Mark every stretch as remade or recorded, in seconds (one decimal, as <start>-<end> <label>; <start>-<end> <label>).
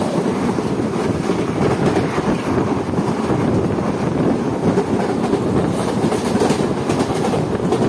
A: 0.0-7.9 recorded